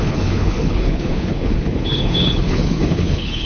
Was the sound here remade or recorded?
remade